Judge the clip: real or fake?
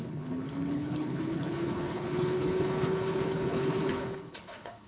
fake